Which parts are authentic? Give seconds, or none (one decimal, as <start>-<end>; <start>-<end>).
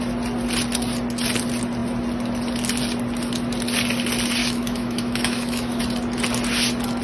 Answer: 0.0-4.4; 5.8-7.0